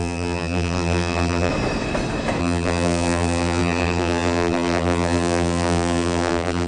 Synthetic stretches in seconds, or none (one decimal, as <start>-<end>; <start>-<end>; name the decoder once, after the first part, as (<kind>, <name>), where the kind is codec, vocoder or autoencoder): 0.0-1.5 (vocoder, BigVGAN v2); 2.4-6.7